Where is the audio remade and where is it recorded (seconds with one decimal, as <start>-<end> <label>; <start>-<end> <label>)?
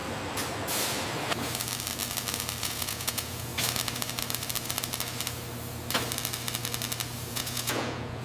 0.0-2.6 recorded; 2.6-3.5 remade; 3.5-7.3 recorded; 7.3-8.2 remade